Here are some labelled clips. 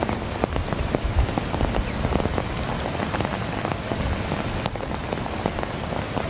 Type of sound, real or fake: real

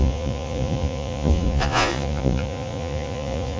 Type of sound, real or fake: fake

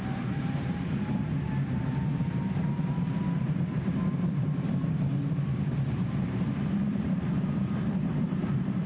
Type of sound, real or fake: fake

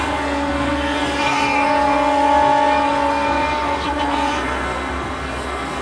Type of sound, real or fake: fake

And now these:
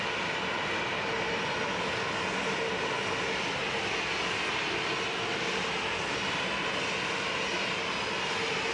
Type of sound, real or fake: real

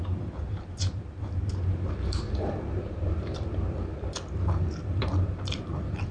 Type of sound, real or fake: fake